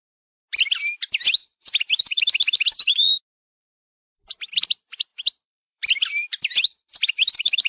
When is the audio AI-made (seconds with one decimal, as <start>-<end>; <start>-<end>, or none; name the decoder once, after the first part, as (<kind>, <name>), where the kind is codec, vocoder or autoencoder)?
1.4-2.2 (vocoder, BigVGAN v2); 3.6-4.6; 5.1-7.7